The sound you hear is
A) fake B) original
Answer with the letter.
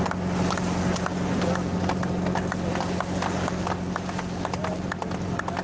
B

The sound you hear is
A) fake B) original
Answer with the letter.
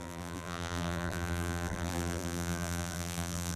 A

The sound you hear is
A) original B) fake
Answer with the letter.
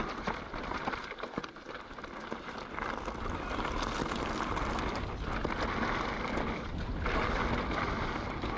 A